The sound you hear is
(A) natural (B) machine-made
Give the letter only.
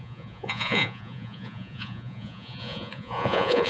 B